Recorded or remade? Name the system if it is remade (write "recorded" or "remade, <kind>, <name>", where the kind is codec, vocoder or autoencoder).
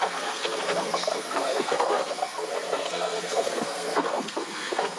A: remade, codec, SNAC